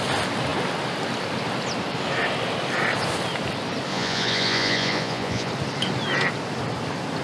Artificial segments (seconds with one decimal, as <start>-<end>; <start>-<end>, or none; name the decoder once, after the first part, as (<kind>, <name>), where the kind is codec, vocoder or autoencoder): 3.9-5.5 (vocoder, Vocos)